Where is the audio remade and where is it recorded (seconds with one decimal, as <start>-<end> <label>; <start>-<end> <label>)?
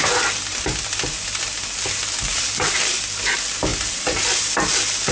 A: 0.0-0.5 recorded; 0.5-1.4 remade; 1.4-2.3 recorded; 2.3-2.9 remade; 2.9-3.7 recorded; 3.7-5.1 remade